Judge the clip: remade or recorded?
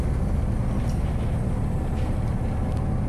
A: recorded